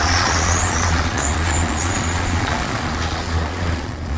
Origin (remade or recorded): remade